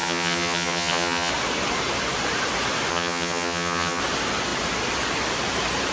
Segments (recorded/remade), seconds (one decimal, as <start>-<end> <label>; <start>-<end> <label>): 0.0-1.3 remade; 1.3-2.9 recorded; 2.9-4.0 remade; 4.0-5.9 recorded